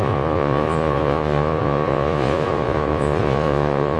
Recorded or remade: remade